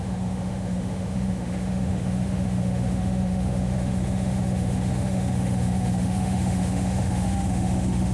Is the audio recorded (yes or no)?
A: no